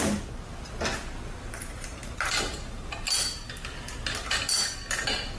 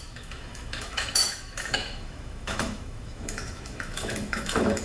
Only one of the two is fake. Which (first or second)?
second